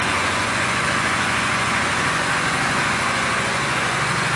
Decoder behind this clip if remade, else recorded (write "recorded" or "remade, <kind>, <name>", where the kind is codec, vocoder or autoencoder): remade, vocoder, Vocos